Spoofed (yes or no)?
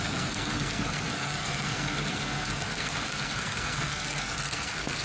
yes